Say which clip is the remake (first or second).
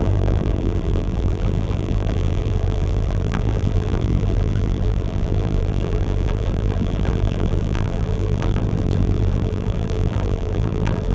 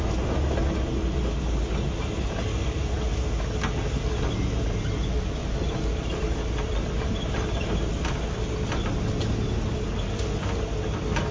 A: first